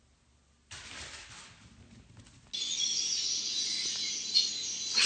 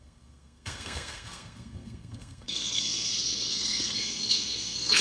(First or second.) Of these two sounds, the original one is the first